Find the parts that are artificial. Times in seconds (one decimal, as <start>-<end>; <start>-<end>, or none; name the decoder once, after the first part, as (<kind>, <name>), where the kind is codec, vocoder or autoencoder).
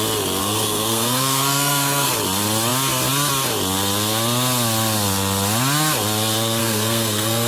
0.4-2.1 (codec, SNAC); 6.6-7.5